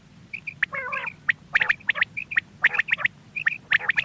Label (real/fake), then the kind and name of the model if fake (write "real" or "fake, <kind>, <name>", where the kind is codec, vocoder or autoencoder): real